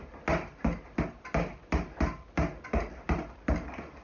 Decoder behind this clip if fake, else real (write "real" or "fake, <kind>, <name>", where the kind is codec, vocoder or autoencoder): real